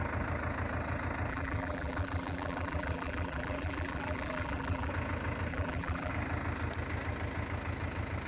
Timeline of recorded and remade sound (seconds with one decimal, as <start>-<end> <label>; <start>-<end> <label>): 0.0-1.3 recorded; 1.3-4.9 remade; 4.9-5.5 recorded; 5.5-6.1 remade; 6.1-8.3 recorded